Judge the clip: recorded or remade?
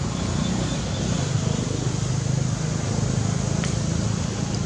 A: recorded